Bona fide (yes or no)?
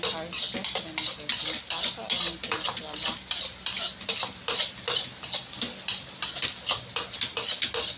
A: yes